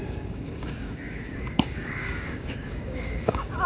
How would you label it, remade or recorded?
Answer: remade